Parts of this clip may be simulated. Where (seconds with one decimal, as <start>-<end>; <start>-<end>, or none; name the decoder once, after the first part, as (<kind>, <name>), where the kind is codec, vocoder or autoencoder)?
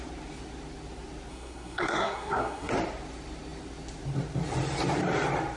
1.3-2.7 (codec, SNAC)